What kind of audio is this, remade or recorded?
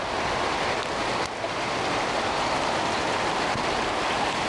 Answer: recorded